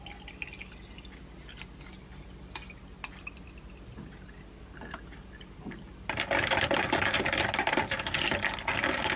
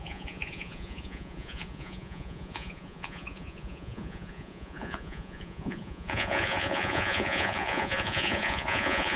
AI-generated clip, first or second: second